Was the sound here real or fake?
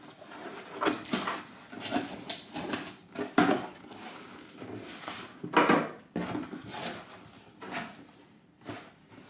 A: real